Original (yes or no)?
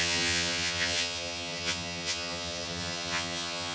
no